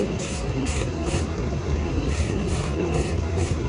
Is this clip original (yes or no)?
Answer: no